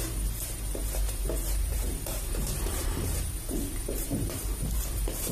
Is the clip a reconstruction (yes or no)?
yes